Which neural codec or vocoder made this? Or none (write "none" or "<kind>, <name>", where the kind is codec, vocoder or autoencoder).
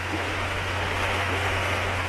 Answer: autoencoder, DAC-VAE